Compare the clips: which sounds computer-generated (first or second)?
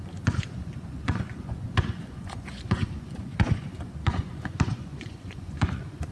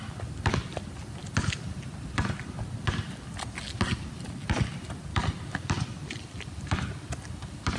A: first